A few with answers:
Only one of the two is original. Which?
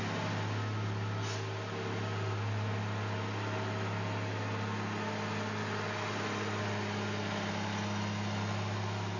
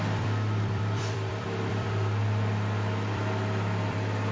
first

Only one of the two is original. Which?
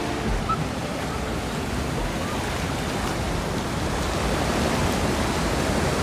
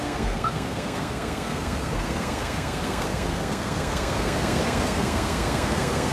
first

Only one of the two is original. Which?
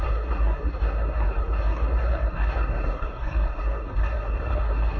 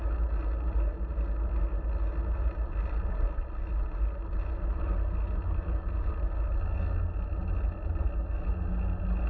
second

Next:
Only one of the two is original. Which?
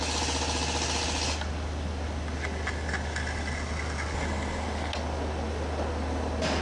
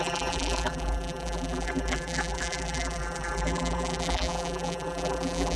first